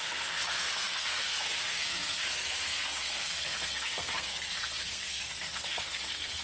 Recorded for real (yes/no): no